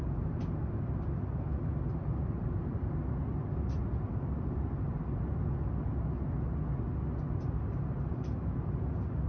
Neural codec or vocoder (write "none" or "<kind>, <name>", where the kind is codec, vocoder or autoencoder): none